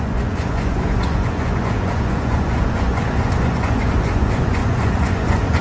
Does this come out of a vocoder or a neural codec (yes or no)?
yes